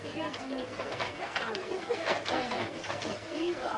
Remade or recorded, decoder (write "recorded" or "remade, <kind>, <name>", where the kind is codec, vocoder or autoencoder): remade, codec, SNAC